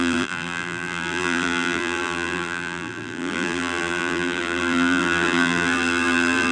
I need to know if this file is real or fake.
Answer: fake